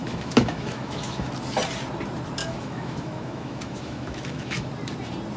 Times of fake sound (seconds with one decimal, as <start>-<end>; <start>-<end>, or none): 0.0-1.3; 2.4-4.7